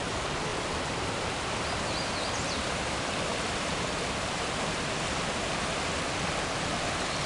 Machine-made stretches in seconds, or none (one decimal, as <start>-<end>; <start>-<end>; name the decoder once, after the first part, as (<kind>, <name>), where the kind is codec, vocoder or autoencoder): 0.5-4.9 (vocoder, BigVGAN v2)